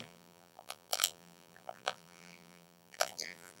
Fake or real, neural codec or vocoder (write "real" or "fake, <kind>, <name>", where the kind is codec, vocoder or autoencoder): fake, vocoder, BigVGAN v2